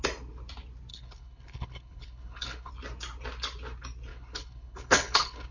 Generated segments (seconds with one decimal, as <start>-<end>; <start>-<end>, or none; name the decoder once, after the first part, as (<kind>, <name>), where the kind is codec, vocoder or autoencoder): 0.9-2.7 (codec, HILCodec); 4.1-5.5